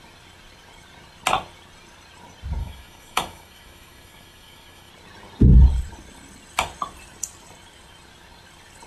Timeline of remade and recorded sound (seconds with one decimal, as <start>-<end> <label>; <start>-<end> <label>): 0.0-2.6 recorded; 2.6-4.9 remade; 4.9-8.9 recorded